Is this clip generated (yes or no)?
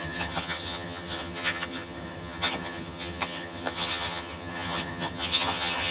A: yes